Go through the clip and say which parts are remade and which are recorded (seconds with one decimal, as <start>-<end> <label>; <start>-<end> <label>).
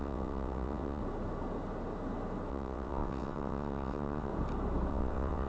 0.0-1.0 remade; 1.0-2.5 recorded; 2.5-4.3 remade; 4.3-4.9 recorded; 4.9-5.5 remade